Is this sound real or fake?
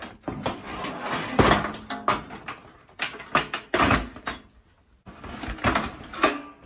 real